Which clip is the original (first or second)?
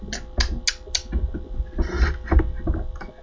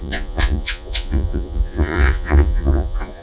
first